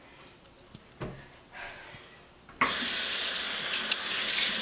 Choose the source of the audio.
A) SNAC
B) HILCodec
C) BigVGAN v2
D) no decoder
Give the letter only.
D